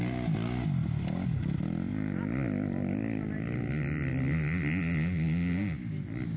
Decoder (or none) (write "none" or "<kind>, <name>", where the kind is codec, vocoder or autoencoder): none